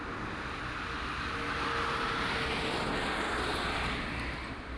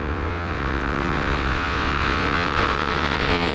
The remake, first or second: second